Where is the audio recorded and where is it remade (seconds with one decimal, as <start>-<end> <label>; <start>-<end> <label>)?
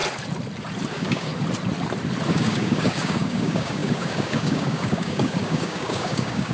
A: 0.0-0.9 recorded; 0.9-1.3 remade; 1.3-2.3 recorded; 2.3-6.5 remade